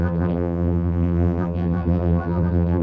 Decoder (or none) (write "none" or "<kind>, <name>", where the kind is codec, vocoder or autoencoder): vocoder, BigVGAN v2